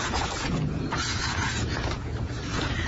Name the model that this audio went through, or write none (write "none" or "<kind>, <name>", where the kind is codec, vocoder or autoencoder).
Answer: vocoder, Vocos